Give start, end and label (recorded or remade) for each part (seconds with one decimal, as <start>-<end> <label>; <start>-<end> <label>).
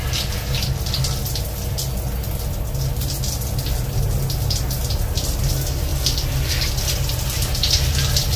0.0-8.4 recorded